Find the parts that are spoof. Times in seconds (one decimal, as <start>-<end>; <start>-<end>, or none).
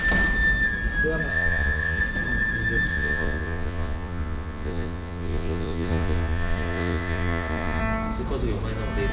1.3-2.0; 2.9-7.8